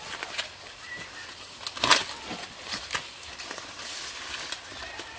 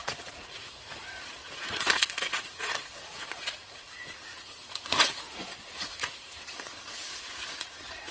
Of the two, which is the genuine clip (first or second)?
first